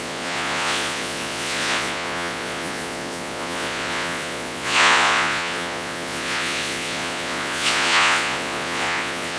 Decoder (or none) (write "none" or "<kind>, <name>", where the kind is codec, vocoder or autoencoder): vocoder, Vocos